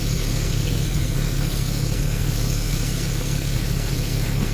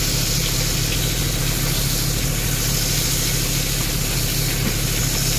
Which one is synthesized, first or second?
first